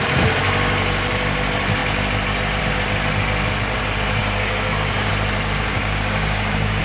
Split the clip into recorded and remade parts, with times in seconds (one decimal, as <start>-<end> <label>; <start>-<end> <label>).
0.0-4.2 recorded; 4.2-5.1 remade; 5.1-5.7 recorded; 5.7-6.8 remade